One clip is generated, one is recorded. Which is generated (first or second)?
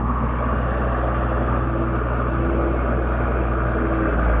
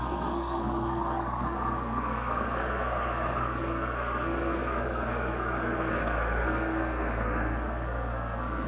second